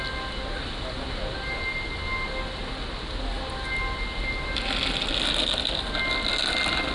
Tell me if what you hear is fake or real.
real